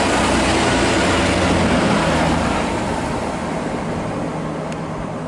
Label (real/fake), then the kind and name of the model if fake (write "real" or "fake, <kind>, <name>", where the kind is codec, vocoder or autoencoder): real